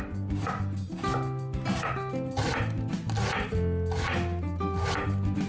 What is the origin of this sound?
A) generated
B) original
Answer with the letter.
B